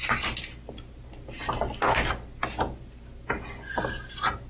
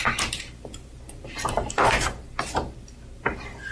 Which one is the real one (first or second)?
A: first